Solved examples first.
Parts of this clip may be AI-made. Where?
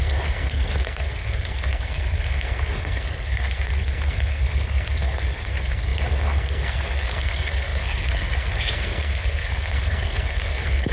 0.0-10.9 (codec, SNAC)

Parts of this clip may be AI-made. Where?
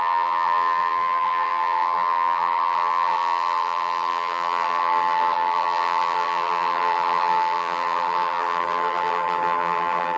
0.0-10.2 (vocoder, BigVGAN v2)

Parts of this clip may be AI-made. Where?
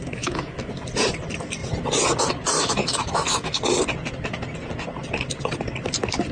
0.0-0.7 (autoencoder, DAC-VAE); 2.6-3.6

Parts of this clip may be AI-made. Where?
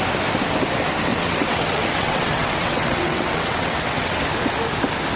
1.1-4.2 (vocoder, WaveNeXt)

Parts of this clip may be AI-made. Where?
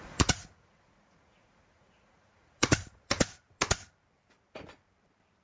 0.0-3.2 (vocoder, Vocos)